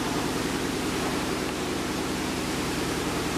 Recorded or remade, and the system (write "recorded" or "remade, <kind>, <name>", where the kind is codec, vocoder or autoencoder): remade, vocoder, BigVGAN v2